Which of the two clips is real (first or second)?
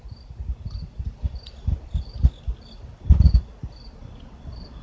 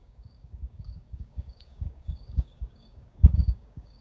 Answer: first